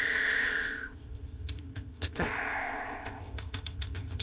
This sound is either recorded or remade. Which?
remade